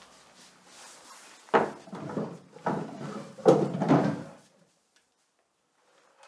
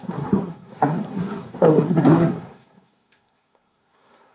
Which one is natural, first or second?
first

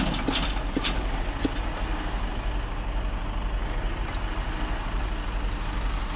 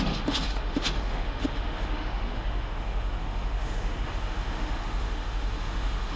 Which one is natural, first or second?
first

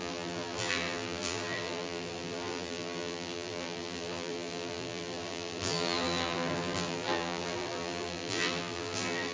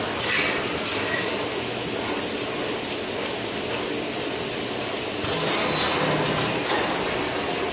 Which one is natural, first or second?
second